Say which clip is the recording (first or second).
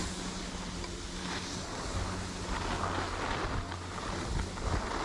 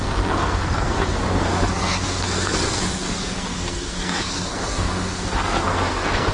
first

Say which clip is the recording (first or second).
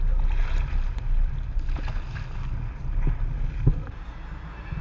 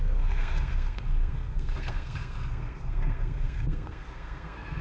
first